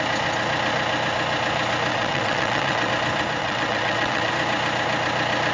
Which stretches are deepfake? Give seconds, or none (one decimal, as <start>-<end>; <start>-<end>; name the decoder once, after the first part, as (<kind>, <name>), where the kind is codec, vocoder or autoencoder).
1.9-2.9 (vocoder, WaveNeXt); 3.4-4.3

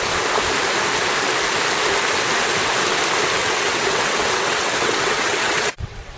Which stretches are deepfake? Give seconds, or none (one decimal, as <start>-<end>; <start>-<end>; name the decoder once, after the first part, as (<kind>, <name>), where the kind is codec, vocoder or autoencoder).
3.4-6.2 (vocoder, WaveNeXt)

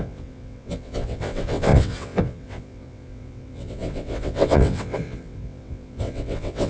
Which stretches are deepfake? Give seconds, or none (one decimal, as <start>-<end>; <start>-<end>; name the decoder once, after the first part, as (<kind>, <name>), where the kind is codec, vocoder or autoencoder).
0.0-6.7 (vocoder, WaveNeXt)

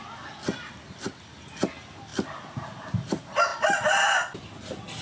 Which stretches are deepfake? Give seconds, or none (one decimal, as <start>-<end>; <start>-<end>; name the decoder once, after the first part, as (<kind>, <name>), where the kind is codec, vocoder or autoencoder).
none

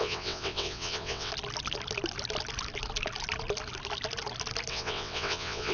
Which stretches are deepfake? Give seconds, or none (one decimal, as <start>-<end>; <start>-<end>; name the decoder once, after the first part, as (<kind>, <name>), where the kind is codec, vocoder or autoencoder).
0.0-1.3 (vocoder, WaveNeXt); 4.7-5.7